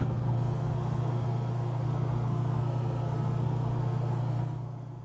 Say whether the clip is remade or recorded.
remade